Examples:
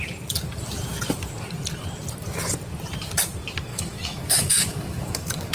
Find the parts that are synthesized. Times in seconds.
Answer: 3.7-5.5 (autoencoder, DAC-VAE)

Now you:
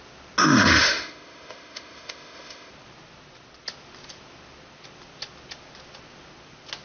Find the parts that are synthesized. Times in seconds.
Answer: 0.4-2.7 (autoencoder, DAC-VAE)

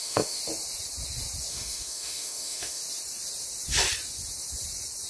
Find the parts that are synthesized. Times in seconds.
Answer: 0.0-0.4 (autoencoder, DAC-VAE); 1.5-2.8

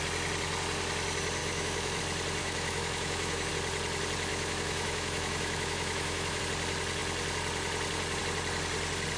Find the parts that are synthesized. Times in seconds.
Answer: 1.4-2.0 (autoencoder, DAC-VAE); 2.4-3.5; 4.3-6.4

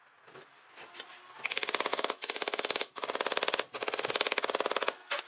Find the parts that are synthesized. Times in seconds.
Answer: 1.9-2.9 (autoencoder, DAC-VAE)

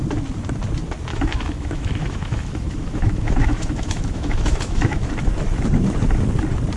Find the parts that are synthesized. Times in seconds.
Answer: 1.1-5.1 (autoencoder, DAC-VAE)

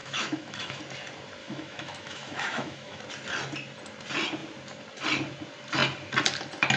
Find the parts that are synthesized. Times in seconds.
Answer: 0.0-0.8 (autoencoder, DAC-VAE); 1.4-3.0